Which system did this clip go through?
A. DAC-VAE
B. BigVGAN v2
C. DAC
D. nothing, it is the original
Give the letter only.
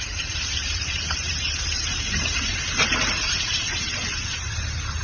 B